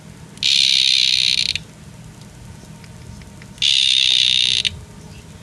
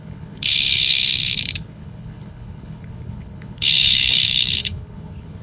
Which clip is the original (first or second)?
first